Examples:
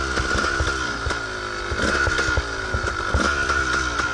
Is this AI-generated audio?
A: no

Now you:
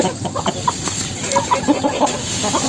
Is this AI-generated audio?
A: no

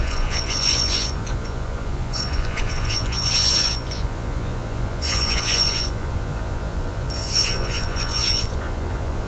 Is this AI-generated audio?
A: yes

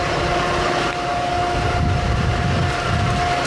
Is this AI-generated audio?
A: no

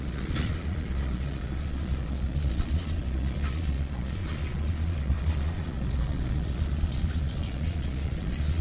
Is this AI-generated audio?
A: yes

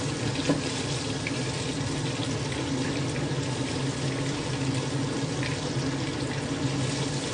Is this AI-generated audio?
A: no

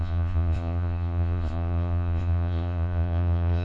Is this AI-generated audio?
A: yes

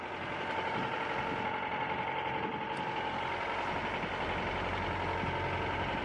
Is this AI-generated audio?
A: no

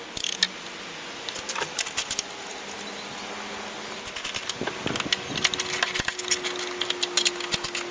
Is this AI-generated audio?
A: no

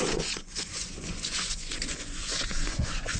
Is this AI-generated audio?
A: yes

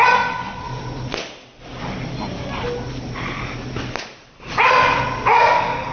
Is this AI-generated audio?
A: no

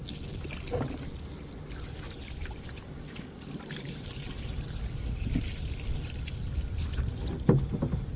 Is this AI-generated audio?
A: no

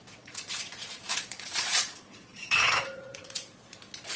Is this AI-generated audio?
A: yes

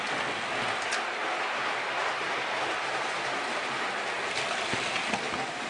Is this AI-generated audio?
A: no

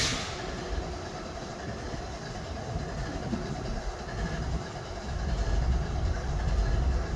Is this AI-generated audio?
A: no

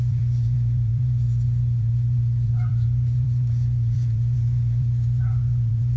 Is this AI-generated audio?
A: yes